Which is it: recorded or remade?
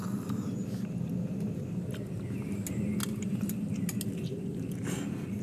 recorded